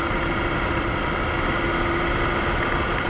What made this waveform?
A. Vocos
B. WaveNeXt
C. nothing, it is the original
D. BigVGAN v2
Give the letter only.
C